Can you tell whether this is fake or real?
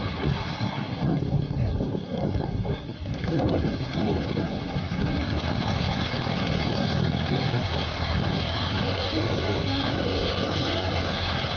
fake